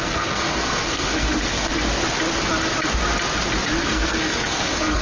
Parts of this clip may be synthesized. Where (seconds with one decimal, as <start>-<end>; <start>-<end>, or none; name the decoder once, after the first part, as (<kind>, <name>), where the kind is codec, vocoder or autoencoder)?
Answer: 0.0-1.7 (codec, SNAC); 3.8-5.0